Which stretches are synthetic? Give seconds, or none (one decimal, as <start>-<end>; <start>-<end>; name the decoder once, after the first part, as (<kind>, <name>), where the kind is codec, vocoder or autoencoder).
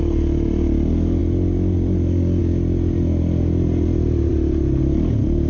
none